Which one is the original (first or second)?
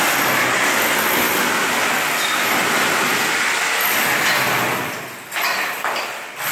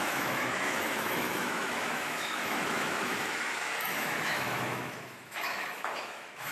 first